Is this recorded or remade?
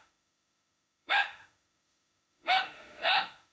remade